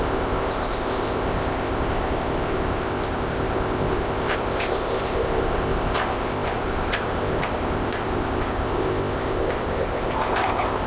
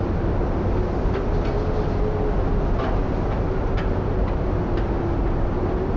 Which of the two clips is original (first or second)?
second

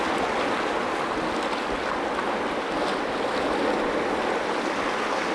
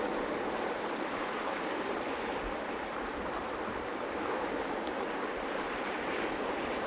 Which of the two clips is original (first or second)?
first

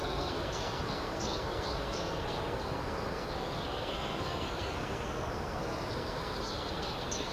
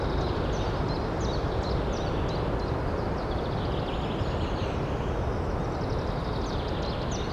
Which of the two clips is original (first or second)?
second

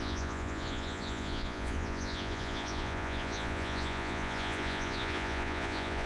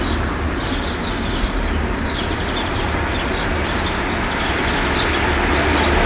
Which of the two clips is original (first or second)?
second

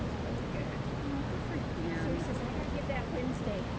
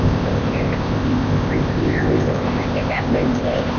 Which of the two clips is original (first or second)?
first